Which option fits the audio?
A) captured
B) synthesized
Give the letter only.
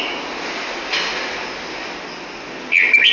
A